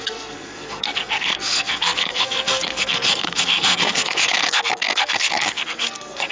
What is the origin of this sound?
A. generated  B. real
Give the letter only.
A